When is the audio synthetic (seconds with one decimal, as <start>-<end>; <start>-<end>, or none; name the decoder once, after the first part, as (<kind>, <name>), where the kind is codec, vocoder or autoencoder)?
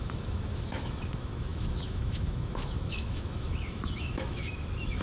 0.0-5.0 (autoencoder, DAC-VAE)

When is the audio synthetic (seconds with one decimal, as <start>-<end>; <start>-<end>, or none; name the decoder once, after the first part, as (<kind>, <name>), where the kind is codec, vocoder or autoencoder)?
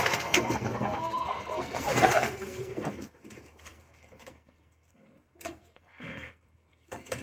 0.0-7.2 (codec, SNAC)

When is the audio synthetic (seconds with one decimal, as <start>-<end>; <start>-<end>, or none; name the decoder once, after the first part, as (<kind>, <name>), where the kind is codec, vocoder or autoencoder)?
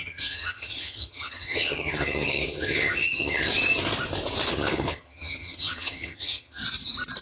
0.0-3.5 (vocoder, HiFi-GAN); 4.5-6.6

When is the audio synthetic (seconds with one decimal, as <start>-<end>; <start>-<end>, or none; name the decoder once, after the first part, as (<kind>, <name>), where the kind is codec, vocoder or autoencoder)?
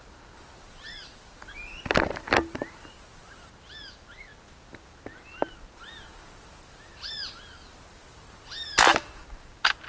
none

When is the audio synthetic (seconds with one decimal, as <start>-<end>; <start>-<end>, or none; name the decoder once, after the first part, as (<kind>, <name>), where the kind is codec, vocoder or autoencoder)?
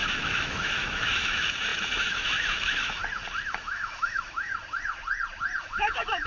0.0-3.0 (autoencoder, DAC-VAE); 3.5-4.5; 5.6-6.3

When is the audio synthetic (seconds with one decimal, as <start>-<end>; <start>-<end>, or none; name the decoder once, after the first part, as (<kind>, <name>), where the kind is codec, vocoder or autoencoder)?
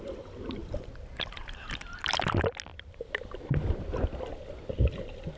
none